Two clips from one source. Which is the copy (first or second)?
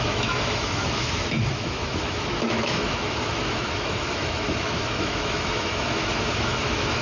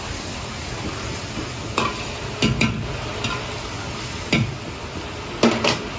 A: first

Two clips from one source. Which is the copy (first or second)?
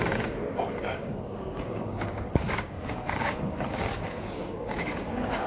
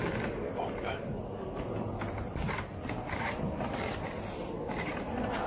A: first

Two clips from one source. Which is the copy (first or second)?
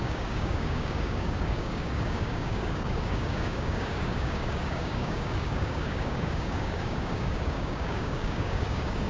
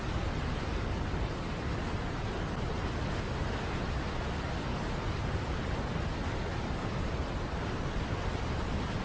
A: first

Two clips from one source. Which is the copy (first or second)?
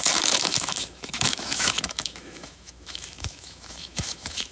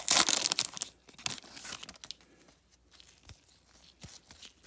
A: first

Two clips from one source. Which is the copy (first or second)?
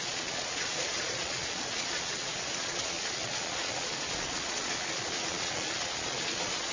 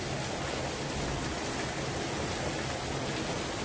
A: first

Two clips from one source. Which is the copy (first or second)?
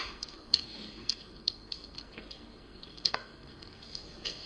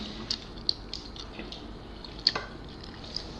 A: first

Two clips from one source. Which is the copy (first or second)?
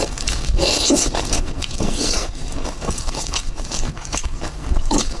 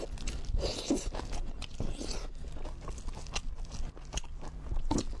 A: first